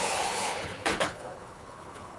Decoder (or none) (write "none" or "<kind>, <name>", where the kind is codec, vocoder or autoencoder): codec, HILCodec